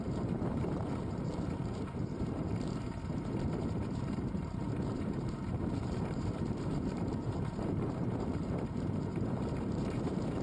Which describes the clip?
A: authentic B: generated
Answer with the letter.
B